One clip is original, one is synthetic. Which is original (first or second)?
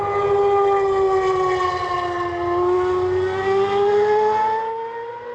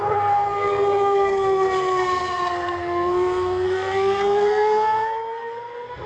first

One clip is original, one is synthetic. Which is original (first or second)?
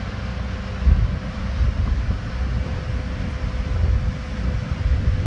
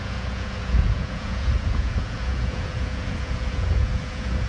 first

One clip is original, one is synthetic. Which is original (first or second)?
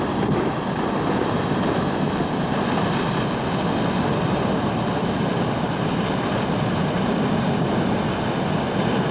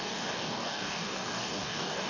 first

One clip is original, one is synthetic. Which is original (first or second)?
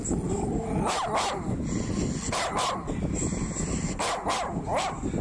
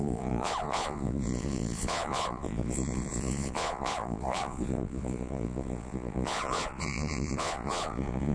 first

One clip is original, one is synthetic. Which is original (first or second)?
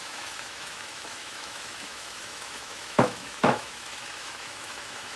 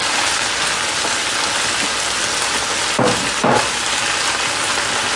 second